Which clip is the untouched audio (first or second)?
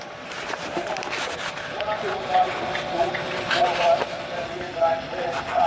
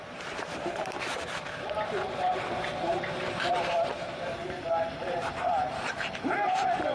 first